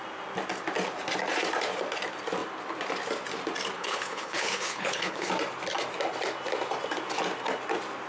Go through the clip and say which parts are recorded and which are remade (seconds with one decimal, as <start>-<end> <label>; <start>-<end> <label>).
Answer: 0.0-3.8 recorded; 3.8-5.3 remade; 5.3-8.1 recorded